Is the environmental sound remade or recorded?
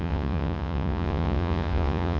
remade